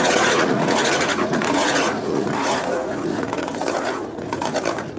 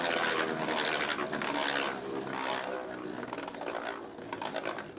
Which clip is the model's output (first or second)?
first